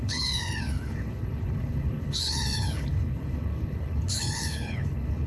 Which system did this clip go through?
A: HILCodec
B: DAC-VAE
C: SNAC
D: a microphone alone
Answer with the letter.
A